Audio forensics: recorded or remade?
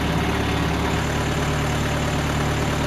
recorded